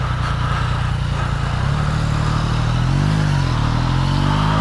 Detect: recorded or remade recorded